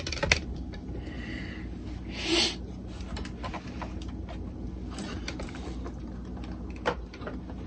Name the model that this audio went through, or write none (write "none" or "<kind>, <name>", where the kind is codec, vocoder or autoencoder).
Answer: none